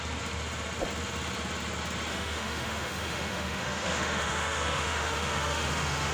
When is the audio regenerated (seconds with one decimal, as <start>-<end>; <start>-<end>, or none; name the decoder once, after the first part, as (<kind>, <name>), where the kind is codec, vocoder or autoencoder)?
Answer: 2.1-6.1 (autoencoder, DAC-VAE)